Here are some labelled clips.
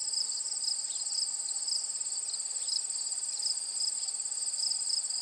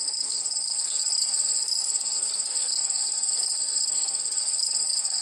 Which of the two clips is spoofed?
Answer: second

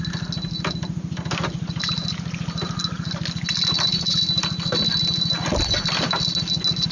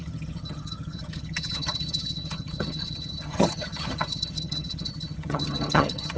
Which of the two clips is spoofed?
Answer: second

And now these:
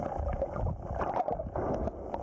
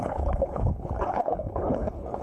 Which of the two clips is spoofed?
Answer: second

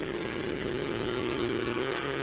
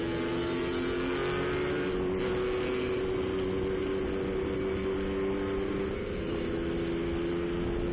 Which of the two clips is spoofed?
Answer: first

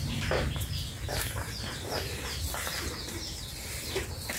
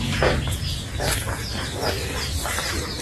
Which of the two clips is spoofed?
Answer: first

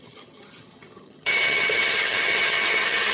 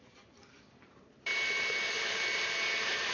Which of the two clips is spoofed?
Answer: first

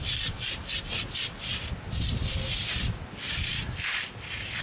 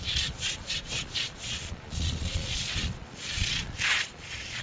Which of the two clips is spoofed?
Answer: second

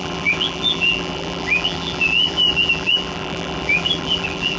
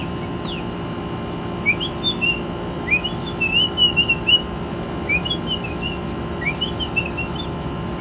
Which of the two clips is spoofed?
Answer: first